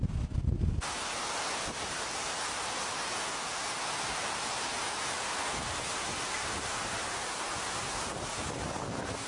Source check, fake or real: real